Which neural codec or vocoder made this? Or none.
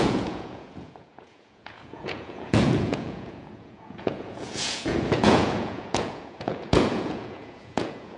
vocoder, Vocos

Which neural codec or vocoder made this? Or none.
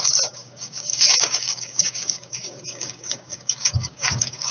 codec, DAC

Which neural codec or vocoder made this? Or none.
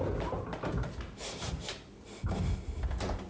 none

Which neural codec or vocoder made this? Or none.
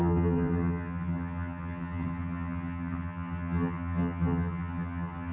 vocoder, HiFi-GAN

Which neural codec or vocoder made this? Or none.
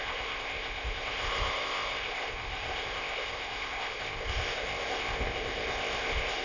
codec, ZipCodec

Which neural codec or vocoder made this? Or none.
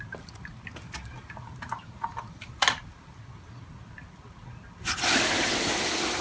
none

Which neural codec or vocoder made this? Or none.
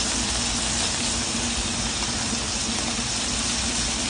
none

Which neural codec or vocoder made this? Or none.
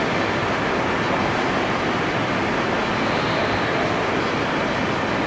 none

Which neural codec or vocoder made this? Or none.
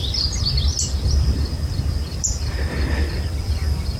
vocoder, BigVGAN v2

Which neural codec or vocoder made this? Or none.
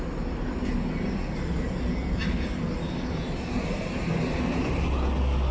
none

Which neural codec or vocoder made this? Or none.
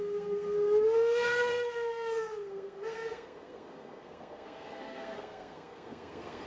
codec, SNAC